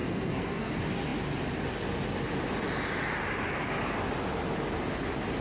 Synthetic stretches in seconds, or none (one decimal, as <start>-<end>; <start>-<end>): 0.0-0.7